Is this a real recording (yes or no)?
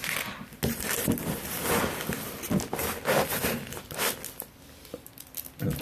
yes